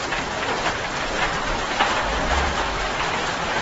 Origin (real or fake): real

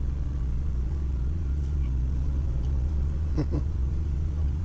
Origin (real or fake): fake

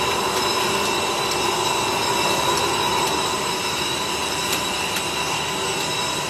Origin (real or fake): real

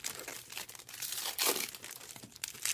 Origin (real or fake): real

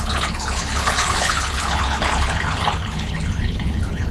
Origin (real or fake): fake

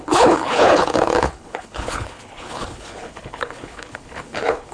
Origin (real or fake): fake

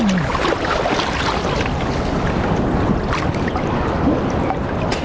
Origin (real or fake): real